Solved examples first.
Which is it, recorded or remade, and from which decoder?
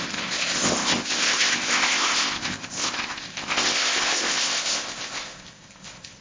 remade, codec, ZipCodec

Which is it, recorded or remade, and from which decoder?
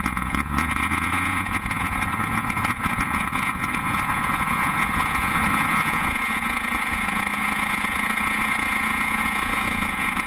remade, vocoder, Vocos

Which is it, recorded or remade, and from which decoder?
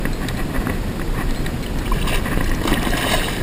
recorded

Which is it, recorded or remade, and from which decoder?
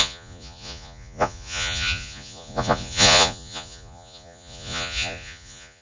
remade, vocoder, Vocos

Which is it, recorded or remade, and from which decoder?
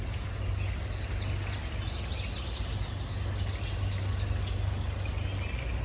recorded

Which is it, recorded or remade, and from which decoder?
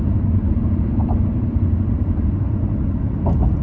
remade, vocoder, BigVGAN v2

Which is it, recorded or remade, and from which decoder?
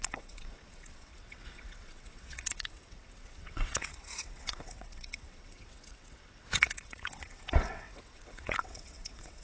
remade, vocoder, WaveNeXt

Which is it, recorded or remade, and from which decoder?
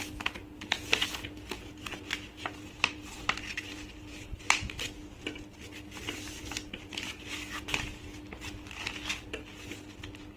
recorded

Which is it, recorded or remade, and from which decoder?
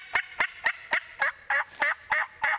recorded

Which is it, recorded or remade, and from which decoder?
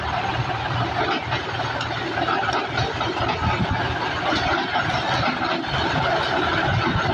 recorded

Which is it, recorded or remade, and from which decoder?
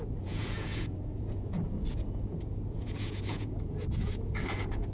remade, vocoder, Vocos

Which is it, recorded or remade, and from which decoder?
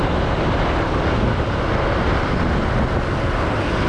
recorded